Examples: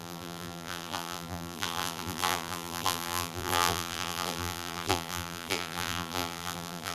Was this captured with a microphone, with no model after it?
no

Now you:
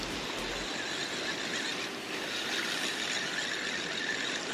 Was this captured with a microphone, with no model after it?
yes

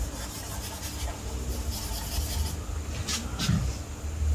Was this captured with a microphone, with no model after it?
yes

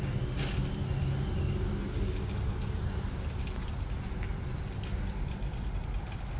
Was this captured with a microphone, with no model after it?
yes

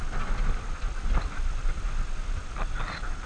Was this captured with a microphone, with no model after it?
yes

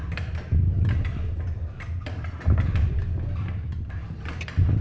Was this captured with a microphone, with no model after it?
no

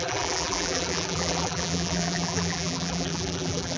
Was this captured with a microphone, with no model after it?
no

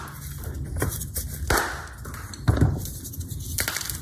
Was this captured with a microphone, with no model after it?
yes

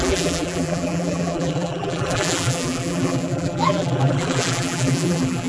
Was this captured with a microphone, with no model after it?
no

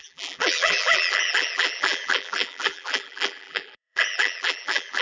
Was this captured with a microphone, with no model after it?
no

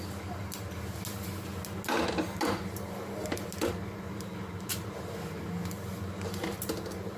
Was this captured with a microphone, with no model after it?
yes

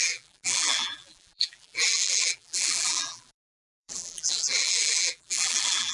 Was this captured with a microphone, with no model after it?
no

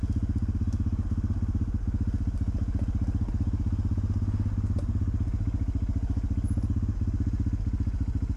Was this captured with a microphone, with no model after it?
yes